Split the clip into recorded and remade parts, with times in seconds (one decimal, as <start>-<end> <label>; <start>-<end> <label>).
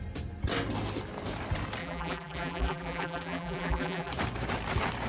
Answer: 0.0-1.8 recorded; 1.8-4.1 remade; 4.1-5.1 recorded